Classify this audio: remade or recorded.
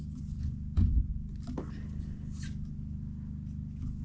recorded